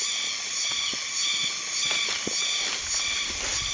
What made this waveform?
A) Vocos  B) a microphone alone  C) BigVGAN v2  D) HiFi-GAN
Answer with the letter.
B